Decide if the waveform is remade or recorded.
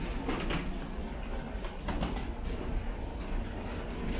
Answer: recorded